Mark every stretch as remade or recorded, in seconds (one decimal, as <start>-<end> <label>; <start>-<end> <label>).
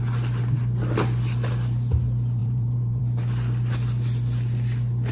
0.0-2.4 recorded; 2.4-3.0 remade; 3.0-5.1 recorded